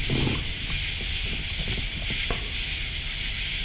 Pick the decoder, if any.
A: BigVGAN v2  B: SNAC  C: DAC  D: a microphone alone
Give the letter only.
D